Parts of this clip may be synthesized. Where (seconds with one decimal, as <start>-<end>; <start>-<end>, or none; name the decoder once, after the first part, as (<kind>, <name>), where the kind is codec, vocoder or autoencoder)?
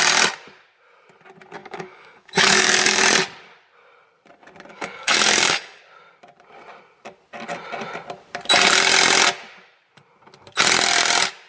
1.6-3.0 (codec, DAC); 4.7-5.8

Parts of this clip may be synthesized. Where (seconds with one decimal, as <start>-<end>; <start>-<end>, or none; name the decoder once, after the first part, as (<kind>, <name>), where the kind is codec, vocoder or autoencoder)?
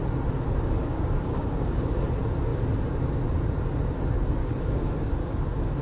0.8-1.9 (codec, DAC); 4.4-5.3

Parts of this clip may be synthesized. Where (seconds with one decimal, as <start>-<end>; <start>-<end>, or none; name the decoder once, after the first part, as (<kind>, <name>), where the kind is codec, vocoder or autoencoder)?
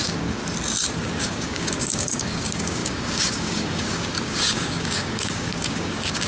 0.0-0.4 (codec, DAC); 1.0-6.3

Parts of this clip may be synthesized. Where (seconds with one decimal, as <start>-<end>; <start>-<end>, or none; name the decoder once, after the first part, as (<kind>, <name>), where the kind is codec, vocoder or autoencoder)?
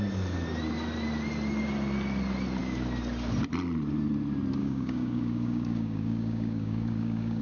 4.6-7.4 (codec, DAC)